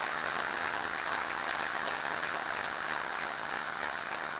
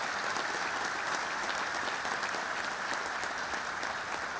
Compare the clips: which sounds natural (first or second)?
second